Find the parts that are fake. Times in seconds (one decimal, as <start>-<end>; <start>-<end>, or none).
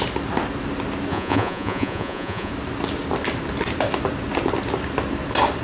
1.1-2.5